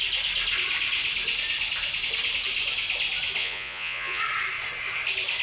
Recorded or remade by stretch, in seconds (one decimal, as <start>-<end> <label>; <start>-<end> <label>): 0.0-3.4 recorded; 3.4-4.2 remade; 4.2-5.4 recorded